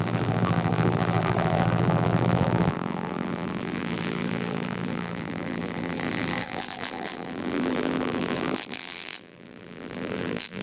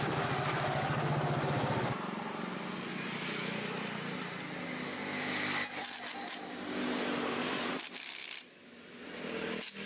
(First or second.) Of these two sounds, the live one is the second